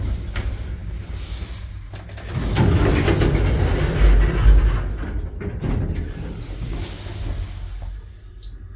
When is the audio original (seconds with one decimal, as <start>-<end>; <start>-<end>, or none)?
0.0-8.8